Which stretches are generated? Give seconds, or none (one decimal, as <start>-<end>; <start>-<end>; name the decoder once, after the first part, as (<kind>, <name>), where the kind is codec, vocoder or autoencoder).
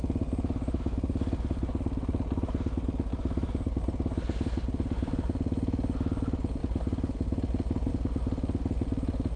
none